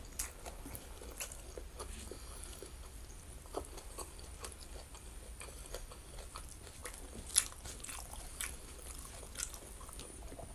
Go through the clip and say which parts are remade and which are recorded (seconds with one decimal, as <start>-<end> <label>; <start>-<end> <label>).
0.0-10.5 recorded